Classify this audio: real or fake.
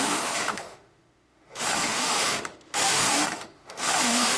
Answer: fake